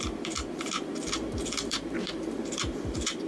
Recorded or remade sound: remade